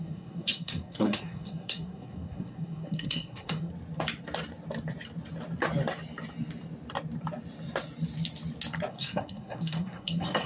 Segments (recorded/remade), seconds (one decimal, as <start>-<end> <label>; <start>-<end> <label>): 0.0-3.7 remade; 3.7-8.9 recorded; 8.9-10.5 remade